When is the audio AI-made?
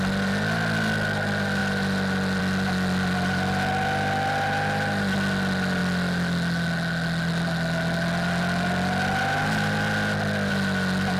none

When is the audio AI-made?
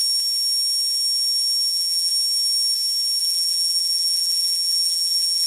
1.7-2.1 (vocoder, BigVGAN v2); 3.2-5.5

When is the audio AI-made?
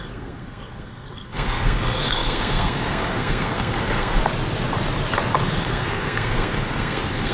0.0-4.2 (codec, SNAC); 5.4-7.3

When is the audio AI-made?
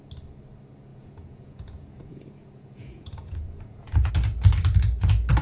0.9-4.1 (vocoder, Vocos)